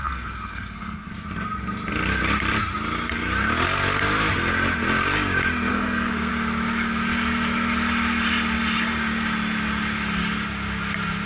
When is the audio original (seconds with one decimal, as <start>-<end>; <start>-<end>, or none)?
1.1-5.7; 6.3-11.3